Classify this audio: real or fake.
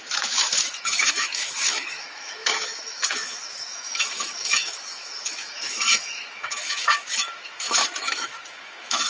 fake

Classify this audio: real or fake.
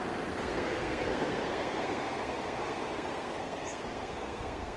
fake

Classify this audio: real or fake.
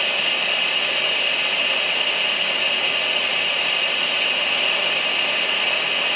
real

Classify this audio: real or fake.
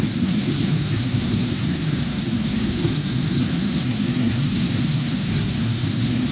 fake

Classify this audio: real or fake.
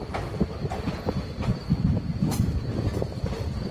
real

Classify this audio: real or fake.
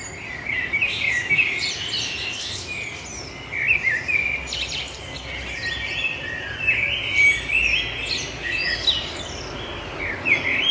real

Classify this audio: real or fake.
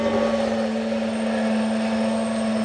real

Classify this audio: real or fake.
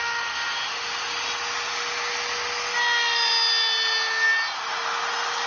real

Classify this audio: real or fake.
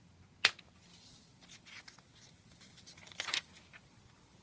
real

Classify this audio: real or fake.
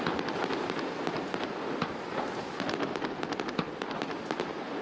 real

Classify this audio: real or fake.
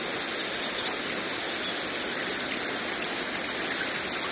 real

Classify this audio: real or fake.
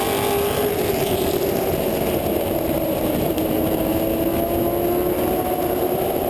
real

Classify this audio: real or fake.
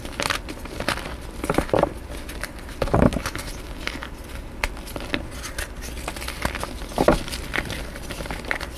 real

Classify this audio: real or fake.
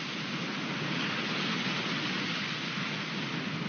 real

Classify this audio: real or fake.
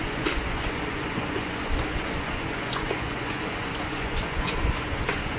fake